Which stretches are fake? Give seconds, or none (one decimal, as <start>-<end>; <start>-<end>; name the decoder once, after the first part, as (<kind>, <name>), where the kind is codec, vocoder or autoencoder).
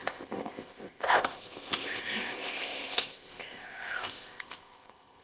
0.0-5.2 (codec, ZipCodec)